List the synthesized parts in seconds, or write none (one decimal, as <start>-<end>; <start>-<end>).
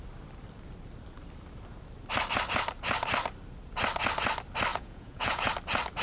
4.7-5.5